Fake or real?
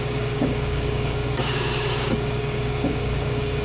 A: fake